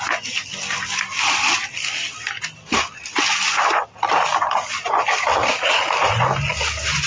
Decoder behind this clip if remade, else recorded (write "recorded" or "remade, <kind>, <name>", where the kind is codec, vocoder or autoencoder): recorded